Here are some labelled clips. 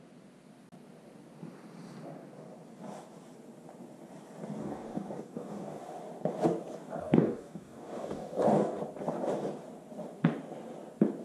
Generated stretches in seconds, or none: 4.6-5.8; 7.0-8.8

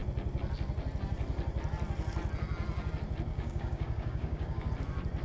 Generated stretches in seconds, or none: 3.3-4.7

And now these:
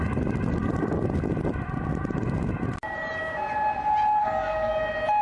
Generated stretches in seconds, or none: 4.2-4.8

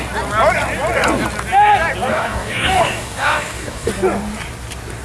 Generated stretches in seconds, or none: 2.1-3.9